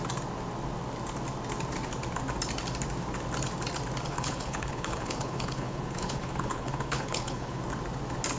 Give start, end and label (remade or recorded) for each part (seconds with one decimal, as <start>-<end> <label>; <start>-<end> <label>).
0.0-4.1 recorded; 4.1-7.6 remade; 7.6-8.4 recorded